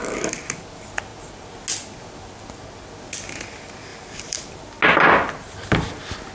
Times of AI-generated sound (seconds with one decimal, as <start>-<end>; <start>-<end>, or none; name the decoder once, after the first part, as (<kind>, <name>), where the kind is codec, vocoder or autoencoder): 3.9-4.6 (vocoder, BigVGAN v2)